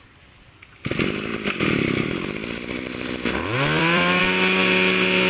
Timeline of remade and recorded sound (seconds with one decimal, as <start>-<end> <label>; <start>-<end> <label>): 0.0-1.3 recorded; 1.3-4.2 remade; 4.2-5.3 recorded